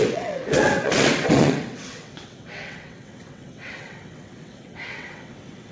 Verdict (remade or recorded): remade